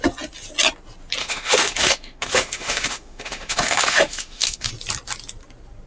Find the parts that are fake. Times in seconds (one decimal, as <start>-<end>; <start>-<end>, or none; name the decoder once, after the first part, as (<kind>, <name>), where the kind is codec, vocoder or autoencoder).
1.2-4.7 (autoencoder, DAC-VAE)